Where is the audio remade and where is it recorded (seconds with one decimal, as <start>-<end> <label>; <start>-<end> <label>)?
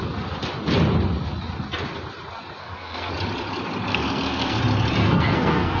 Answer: 0.0-2.6 recorded; 2.6-3.1 remade; 3.1-3.9 recorded; 3.9-4.6 remade; 4.6-5.0 recorded; 5.0-5.8 remade